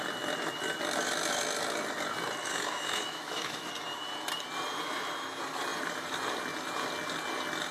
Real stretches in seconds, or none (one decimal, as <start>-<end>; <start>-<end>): 0.0-2.5; 3.7-7.7